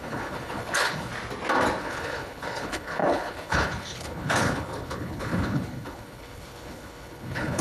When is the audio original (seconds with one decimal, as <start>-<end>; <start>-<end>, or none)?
1.1-1.8